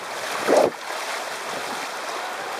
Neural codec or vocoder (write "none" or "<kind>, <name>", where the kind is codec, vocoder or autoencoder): none